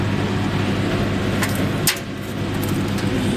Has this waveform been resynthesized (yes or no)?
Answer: no